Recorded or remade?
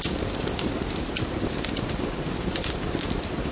recorded